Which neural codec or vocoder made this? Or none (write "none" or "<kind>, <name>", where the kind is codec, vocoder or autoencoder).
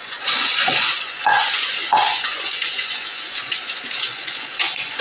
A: vocoder, Vocos